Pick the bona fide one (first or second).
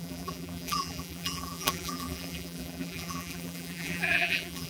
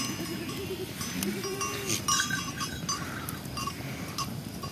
second